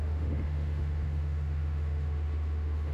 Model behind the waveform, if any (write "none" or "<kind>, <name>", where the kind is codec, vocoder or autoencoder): autoencoder, DAC-VAE